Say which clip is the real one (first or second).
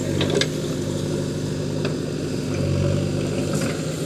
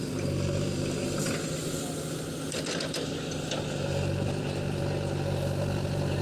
first